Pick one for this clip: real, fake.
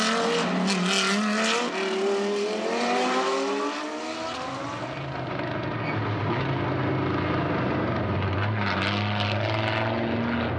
real